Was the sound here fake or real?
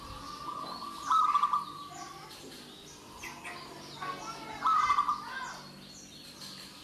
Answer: real